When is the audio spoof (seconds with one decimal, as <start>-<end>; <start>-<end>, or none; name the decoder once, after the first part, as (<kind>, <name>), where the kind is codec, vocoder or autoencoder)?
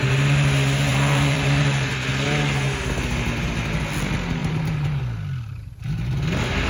0.9-1.9 (vocoder, BigVGAN v2); 4.4-5.0